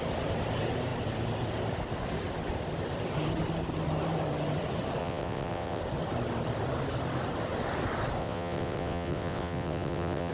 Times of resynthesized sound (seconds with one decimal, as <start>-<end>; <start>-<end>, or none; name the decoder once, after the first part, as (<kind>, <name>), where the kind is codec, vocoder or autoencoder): 5.0-5.8 (vocoder, WaveNeXt); 8.2-10.3